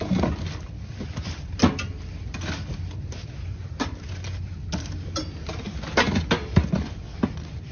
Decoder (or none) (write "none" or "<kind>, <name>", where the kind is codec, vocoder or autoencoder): none